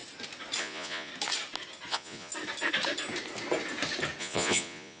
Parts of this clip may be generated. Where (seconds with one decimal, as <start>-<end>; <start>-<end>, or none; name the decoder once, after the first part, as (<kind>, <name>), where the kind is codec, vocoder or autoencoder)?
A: 0.6-1.1 (vocoder, Vocos); 1.9-2.3; 4.2-5.0